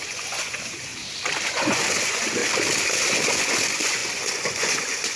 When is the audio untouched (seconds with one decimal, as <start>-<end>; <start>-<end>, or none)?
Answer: 0.9-1.5; 2.4-3.1